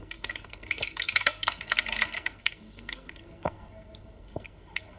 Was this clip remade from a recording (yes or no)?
yes